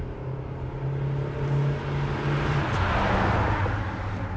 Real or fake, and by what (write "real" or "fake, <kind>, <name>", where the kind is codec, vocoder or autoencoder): real